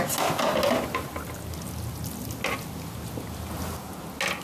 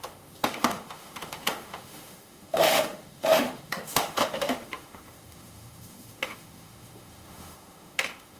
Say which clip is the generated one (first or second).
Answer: second